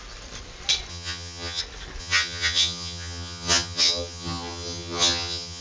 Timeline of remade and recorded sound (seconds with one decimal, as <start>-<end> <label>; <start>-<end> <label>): 0.0-0.9 recorded; 0.9-1.6 remade; 1.6-2.0 recorded; 2.0-5.6 remade